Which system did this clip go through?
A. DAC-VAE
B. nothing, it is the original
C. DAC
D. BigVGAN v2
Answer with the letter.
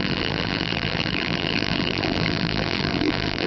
D